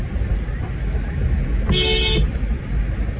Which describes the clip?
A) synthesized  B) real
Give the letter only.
B